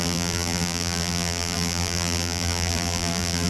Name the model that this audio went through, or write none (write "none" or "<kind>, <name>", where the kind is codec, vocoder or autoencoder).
vocoder, BigVGAN v2